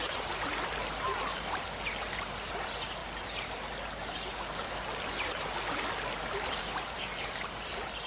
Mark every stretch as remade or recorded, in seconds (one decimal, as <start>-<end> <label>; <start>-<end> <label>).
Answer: 0.0-8.1 recorded